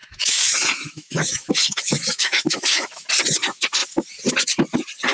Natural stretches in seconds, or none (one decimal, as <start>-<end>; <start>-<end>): 3.1-5.1